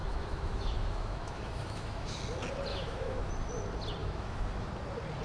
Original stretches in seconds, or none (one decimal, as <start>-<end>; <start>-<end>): 2.2-2.7; 3.3-4.0; 4.7-5.2